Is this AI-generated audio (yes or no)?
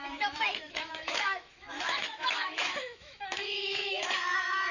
yes